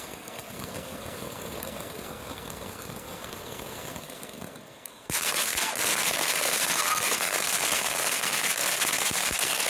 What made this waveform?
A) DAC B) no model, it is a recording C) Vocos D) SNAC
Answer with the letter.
D